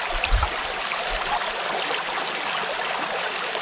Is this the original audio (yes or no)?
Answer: yes